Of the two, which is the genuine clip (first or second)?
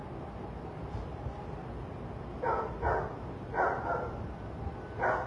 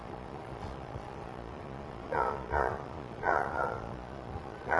first